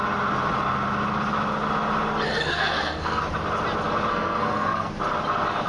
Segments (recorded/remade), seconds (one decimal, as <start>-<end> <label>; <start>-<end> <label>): 0.0-2.3 recorded; 2.3-3.2 remade; 3.2-4.1 recorded; 4.1-4.9 remade; 4.9-5.7 recorded